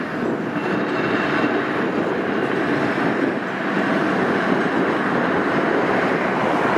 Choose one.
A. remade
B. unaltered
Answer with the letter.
B